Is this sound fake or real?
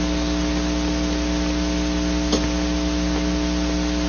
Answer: real